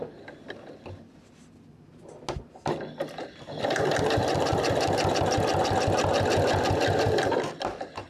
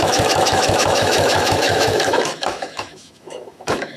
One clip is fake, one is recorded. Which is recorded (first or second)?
first